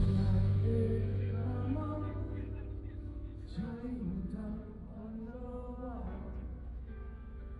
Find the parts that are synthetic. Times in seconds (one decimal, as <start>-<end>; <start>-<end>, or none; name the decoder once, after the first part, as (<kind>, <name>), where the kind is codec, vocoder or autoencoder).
0.0-3.5 (autoencoder, DAC-VAE); 6.6-7.6